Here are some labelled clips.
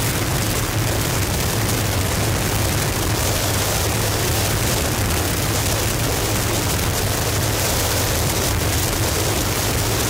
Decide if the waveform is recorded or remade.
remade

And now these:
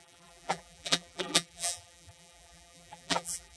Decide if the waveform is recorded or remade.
remade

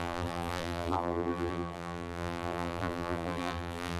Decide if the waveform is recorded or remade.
remade